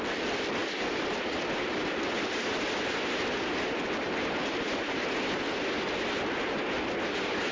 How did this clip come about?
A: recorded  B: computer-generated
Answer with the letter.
A